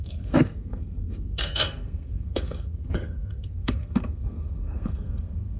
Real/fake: fake